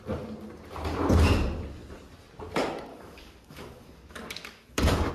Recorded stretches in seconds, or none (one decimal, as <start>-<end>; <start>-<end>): 0.0-2.9